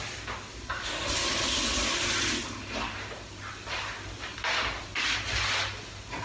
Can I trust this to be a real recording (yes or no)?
yes